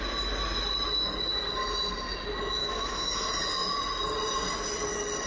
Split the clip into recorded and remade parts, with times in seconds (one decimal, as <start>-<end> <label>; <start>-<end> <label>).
0.0-2.6 recorded; 2.6-3.4 remade; 3.4-5.3 recorded